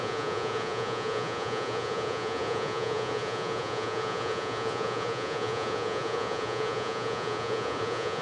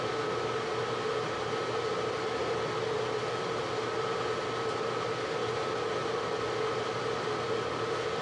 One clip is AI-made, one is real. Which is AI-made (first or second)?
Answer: first